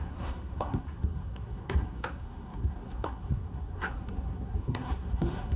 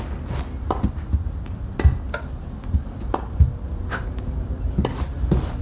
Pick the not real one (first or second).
first